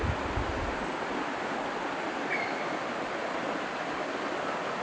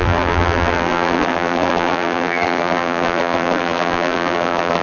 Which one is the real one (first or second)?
first